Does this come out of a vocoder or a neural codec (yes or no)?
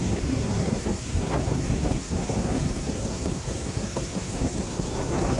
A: yes